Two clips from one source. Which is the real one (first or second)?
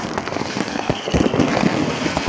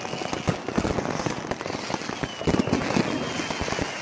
second